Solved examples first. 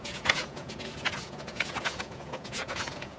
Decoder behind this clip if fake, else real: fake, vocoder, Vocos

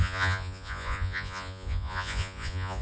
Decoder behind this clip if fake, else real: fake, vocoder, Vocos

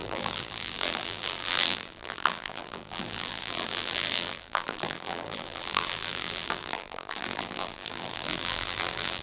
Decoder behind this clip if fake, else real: fake, vocoder, BigVGAN v2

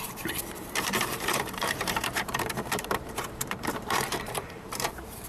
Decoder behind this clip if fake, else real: fake, vocoder, BigVGAN v2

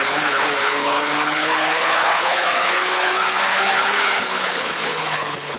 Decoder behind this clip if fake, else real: fake, codec, HILCodec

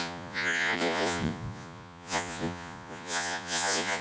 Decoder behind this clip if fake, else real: fake, vocoder, Vocos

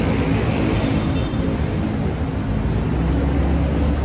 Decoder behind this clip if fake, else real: real